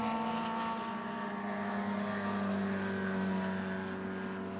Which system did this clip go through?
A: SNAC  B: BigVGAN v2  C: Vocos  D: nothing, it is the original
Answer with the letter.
D